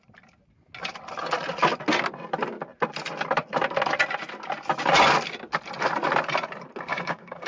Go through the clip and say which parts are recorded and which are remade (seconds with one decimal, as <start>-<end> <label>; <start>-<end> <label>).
0.0-6.9 recorded; 6.9-7.5 remade